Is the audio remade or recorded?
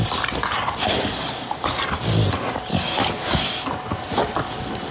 recorded